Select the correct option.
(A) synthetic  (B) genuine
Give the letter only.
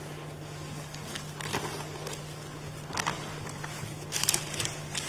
B